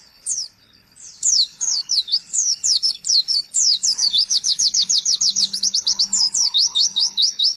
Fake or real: fake